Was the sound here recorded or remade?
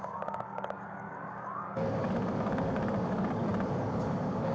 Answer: remade